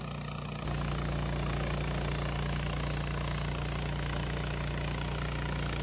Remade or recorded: recorded